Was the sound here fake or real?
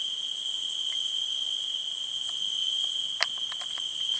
real